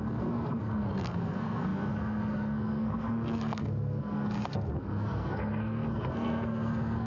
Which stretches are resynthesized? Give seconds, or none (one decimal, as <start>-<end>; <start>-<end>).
0.0-7.1